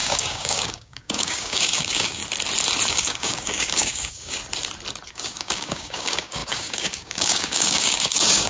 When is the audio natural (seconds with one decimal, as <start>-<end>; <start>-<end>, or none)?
2.2-2.9; 4.4-5.1